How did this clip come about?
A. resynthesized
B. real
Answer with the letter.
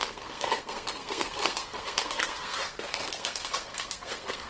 A